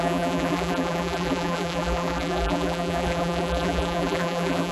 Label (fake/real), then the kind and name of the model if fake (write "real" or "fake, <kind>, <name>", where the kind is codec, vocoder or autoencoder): fake, vocoder, BigVGAN v2